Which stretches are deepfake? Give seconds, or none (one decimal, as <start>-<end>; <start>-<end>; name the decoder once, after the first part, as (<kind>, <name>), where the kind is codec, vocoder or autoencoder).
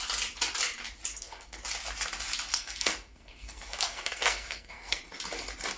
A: 1.1-1.6 (codec, SNAC); 2.5-5.0